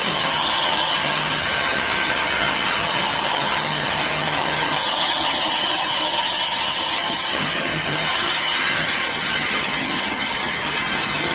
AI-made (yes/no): yes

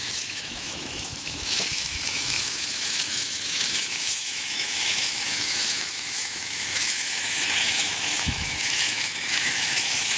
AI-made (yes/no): yes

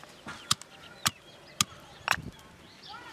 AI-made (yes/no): no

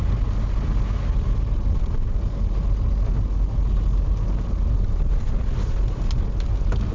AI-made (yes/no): no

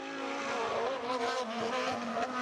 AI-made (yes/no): no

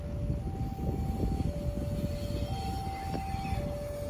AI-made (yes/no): no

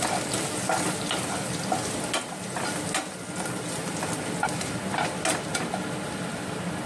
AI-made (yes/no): no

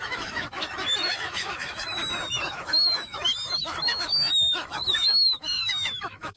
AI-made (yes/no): yes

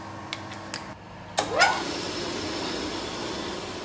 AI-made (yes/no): no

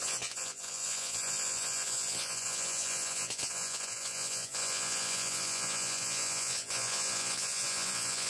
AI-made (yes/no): yes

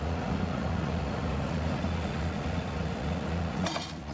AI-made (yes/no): yes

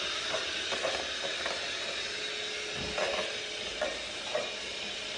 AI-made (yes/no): no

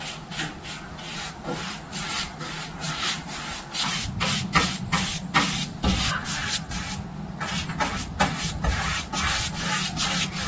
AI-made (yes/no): no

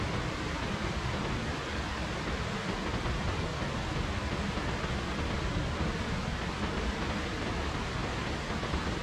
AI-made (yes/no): no